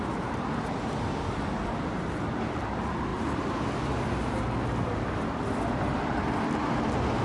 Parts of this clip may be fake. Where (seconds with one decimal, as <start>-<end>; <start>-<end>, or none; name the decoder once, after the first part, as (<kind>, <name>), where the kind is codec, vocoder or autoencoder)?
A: none

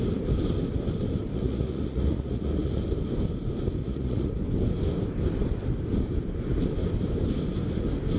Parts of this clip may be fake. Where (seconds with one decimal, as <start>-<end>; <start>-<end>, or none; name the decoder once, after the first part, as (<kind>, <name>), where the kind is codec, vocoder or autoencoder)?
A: 1.3-2.8 (vocoder, Vocos); 3.8-4.3

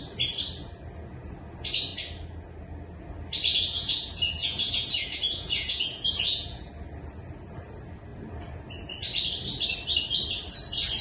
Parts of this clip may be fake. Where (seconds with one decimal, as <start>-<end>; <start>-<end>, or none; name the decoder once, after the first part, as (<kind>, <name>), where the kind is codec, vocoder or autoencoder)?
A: 3.5-6.7 (vocoder, Vocos)

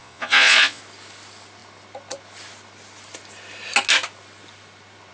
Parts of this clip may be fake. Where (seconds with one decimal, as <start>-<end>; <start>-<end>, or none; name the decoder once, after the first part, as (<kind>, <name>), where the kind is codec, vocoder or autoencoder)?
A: 0.0-0.8 (vocoder, Vocos)

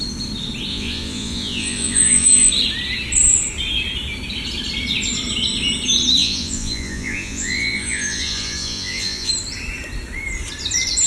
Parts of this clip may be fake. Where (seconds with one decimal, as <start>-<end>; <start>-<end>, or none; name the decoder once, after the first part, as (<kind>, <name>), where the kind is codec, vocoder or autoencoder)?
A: 0.7-2.5 (vocoder, Vocos); 6.2-9.3